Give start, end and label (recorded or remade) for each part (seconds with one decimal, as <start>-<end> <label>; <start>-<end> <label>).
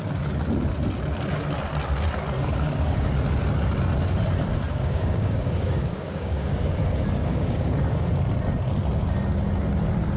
0.0-4.7 recorded; 4.7-6.6 remade; 6.6-7.2 recorded; 7.2-7.8 remade; 7.8-10.2 recorded